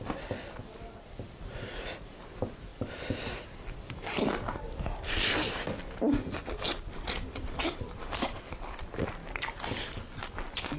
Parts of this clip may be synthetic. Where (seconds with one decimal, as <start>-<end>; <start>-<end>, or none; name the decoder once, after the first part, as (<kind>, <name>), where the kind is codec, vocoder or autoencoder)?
none